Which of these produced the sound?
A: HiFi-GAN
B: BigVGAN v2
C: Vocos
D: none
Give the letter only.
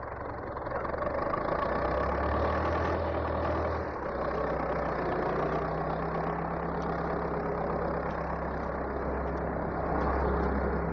D